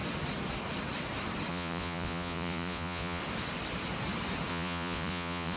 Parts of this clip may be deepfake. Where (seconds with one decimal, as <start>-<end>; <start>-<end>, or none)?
1.5-3.2; 4.5-5.6